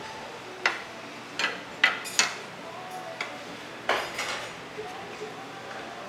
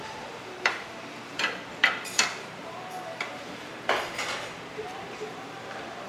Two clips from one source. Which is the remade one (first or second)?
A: second